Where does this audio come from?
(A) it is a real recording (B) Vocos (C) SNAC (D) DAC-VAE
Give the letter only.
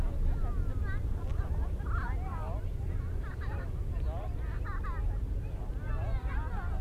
A